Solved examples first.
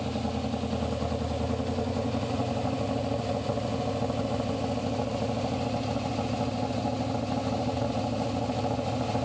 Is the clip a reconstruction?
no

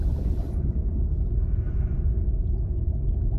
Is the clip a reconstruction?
no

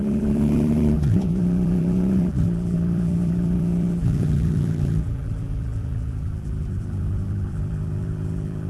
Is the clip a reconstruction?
yes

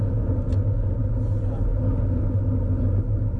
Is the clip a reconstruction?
no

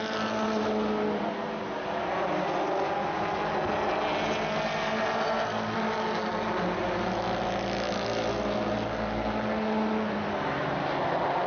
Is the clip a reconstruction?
no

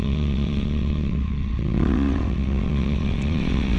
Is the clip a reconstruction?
yes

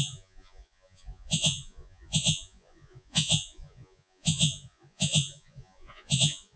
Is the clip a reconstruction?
yes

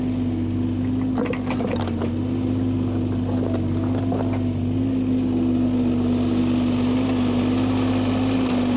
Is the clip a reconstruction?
no